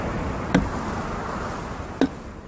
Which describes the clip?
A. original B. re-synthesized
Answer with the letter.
A